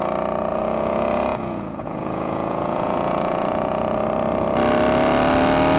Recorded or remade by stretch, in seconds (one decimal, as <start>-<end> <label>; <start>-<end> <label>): 0.0-0.5 recorded; 0.5-4.0 remade; 4.0-5.8 recorded